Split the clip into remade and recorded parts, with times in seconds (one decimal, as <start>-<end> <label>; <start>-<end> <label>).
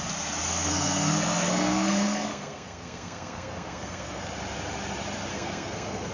0.0-0.5 recorded; 0.5-4.2 remade; 4.2-5.3 recorded; 5.3-6.1 remade